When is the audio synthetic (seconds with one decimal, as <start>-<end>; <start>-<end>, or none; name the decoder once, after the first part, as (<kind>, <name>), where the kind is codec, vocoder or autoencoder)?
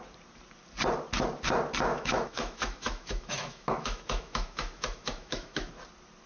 1.9-5.7 (autoencoder, DAC-VAE)